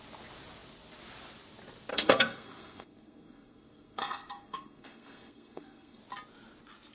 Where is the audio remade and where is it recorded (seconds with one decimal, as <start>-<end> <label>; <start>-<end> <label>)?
0.0-1.9 recorded; 1.9-6.0 remade; 6.0-6.9 recorded